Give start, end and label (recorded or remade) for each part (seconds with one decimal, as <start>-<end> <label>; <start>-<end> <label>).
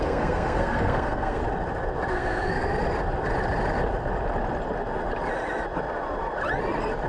0.0-1.4 remade; 1.4-2.1 recorded; 2.1-2.7 remade; 2.7-7.1 recorded